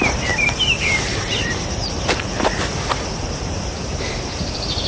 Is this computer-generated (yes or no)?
yes